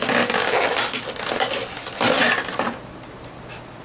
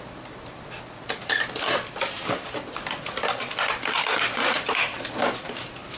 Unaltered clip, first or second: first